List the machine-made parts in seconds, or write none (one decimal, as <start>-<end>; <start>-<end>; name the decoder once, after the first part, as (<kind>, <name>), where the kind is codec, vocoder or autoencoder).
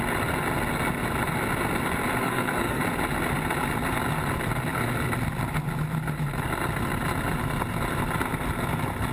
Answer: 2.2-2.8 (codec, SNAC)